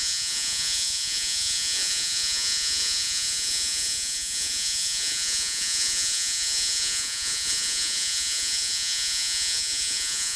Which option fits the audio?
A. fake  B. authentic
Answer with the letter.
A